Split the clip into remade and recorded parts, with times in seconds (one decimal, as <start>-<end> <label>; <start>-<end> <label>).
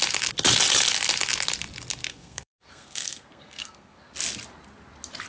0.0-2.1 recorded; 2.1-4.1 remade; 4.1-5.3 recorded